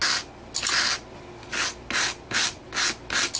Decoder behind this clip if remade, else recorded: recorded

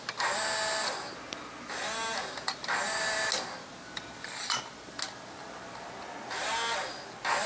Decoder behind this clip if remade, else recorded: recorded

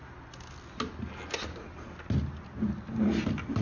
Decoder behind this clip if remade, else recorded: recorded